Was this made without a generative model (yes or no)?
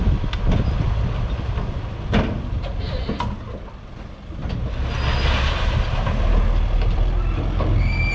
yes